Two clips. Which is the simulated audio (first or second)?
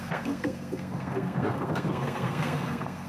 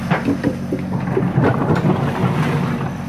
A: first